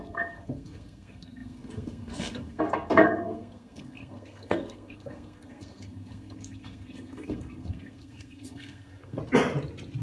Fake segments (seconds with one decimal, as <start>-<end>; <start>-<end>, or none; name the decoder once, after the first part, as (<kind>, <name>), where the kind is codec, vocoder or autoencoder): 0.0-9.2 (codec, SNAC)